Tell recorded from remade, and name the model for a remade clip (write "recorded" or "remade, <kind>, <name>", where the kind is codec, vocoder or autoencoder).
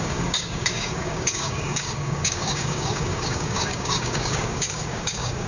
remade, codec, DAC